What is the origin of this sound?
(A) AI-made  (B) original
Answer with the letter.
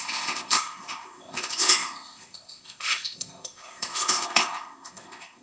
A